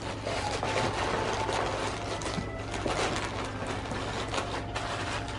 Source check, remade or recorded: recorded